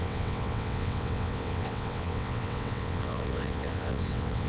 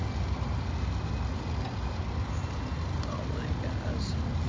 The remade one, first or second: first